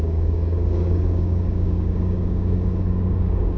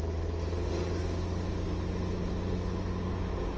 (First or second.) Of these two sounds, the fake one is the first